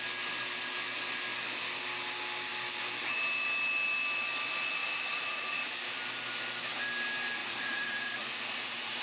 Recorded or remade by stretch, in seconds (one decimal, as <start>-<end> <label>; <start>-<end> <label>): 0.0-4.8 recorded; 4.8-5.6 remade; 5.6-7.4 recorded; 7.4-9.0 remade